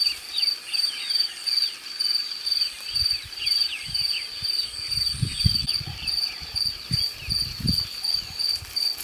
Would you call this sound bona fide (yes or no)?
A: yes